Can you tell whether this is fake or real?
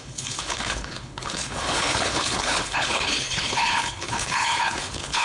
fake